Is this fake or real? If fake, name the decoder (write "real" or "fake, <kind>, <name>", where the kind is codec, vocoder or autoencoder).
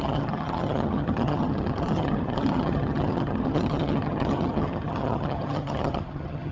fake, vocoder, HiFi-GAN